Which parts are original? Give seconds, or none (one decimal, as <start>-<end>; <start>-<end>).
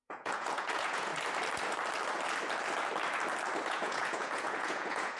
1.1-3.7